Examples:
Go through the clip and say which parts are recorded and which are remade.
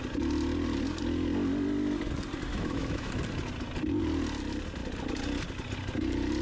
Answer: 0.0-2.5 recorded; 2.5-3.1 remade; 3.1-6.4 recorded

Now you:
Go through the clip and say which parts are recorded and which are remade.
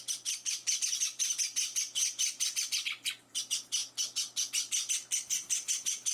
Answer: 0.0-6.1 recorded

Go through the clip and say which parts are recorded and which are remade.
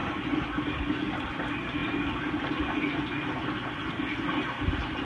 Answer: 0.0-5.0 recorded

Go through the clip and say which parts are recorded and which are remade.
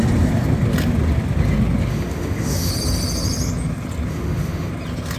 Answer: 0.0-1.9 recorded; 1.9-2.7 remade; 2.7-4.1 recorded; 4.1-4.7 remade; 4.7-5.2 recorded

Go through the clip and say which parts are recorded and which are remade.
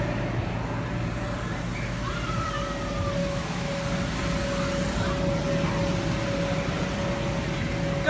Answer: 0.0-3.2 recorded; 3.2-3.7 remade; 3.7-8.1 recorded